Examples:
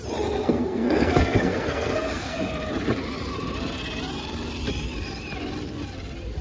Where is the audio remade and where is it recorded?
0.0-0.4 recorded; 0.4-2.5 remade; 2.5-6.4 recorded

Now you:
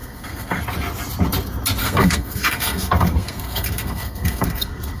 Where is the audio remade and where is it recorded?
0.0-0.6 remade; 0.6-1.8 recorded; 1.8-5.0 remade

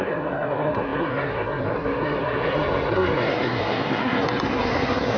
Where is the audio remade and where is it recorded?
0.0-5.2 remade